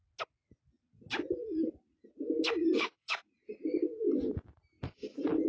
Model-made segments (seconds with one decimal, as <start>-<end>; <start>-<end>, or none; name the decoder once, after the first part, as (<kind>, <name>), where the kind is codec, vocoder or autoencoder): 2.6-3.3 (codec, DAC)